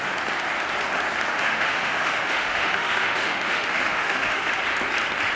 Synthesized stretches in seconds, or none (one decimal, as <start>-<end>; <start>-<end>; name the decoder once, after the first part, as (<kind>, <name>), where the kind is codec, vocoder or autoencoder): 1.3-4.5 (autoencoder, DAC-VAE)